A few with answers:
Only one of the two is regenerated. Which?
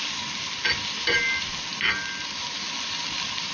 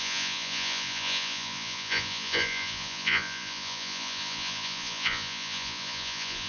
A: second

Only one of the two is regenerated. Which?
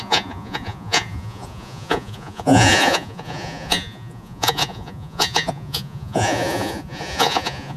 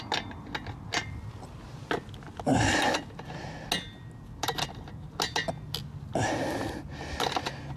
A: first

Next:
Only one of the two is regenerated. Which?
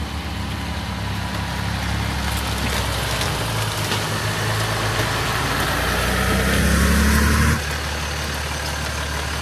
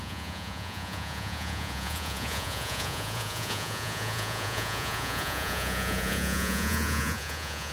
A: second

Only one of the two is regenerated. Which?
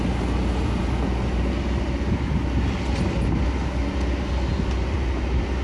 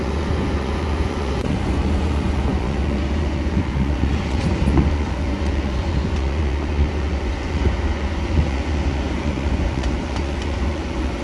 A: second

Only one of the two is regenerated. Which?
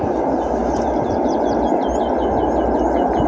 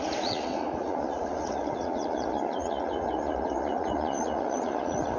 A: second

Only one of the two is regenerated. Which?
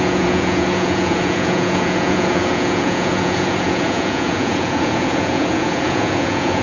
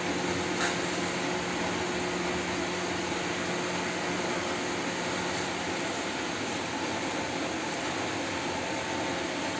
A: first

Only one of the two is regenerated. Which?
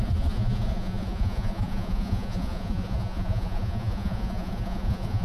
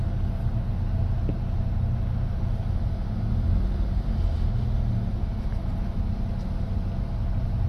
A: first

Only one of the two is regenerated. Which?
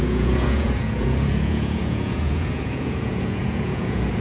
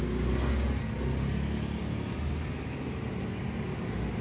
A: first